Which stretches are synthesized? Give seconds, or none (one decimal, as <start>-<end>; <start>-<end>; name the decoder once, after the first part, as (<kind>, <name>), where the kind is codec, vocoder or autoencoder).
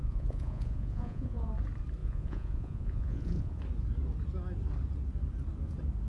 0.0-1.5 (vocoder, Vocos); 2.0-3.6